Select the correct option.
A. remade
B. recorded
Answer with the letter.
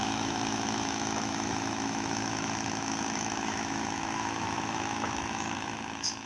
A